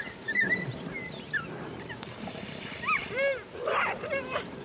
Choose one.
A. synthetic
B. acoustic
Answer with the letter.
A